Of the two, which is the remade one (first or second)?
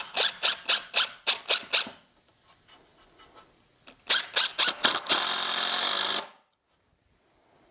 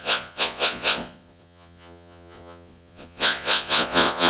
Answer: second